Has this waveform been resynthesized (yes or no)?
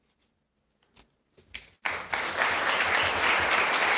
no